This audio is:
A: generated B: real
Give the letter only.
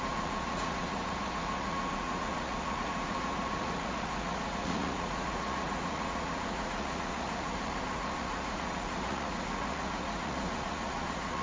A